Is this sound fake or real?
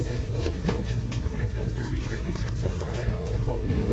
fake